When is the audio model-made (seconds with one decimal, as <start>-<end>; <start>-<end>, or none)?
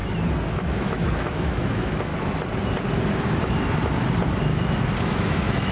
0.5-2.1; 5.0-5.7